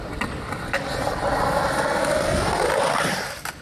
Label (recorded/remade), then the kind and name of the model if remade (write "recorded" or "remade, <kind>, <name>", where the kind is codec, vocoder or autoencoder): recorded